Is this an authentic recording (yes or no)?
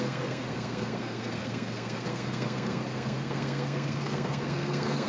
no